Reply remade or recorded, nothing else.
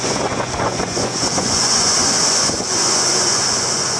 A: remade